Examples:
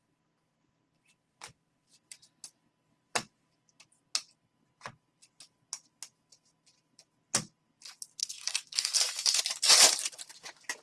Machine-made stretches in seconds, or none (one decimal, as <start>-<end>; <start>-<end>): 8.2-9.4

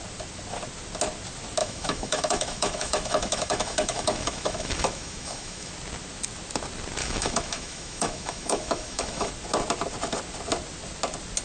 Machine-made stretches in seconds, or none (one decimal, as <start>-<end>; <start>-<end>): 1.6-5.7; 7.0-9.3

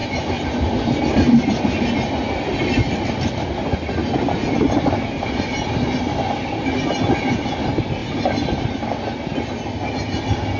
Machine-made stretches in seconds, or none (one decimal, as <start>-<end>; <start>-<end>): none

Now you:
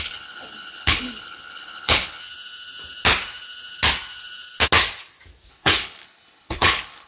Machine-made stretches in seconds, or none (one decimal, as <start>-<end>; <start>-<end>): 0.0-2.2; 5.5-7.1

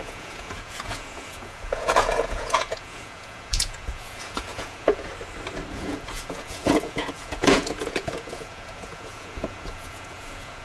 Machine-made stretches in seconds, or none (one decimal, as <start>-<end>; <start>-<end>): 0.0-5.1; 5.7-10.6

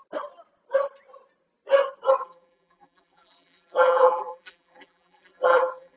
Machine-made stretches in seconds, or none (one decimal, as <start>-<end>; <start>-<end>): 2.2-6.0